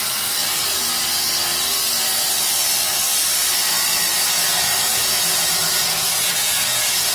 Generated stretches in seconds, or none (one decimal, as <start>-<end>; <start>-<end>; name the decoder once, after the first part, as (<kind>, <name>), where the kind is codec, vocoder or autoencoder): 4.1-7.1 (vocoder, Vocos)